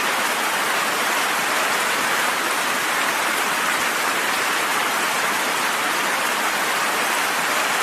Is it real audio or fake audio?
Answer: real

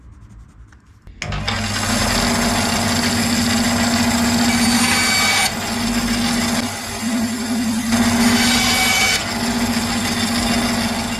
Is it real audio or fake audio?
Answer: real